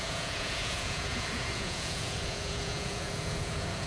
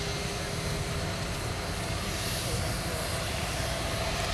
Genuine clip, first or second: second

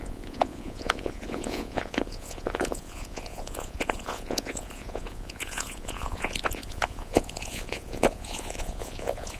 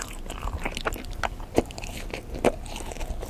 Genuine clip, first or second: second